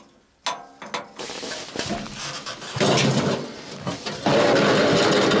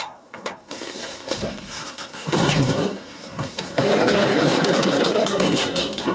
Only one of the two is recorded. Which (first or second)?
first